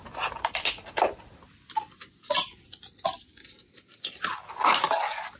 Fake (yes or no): no